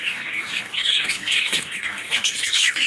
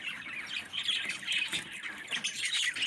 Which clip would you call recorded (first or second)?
second